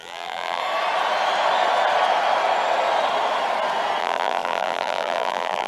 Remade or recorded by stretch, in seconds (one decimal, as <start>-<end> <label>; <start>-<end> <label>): 0.0-0.6 remade; 0.6-4.0 recorded; 4.0-5.7 remade